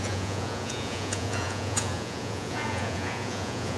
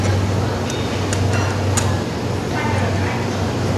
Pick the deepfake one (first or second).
first